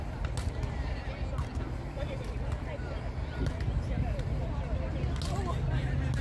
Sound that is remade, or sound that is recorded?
recorded